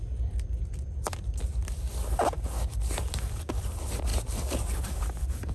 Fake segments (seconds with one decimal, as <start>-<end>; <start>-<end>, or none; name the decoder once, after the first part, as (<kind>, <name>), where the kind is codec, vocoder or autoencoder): none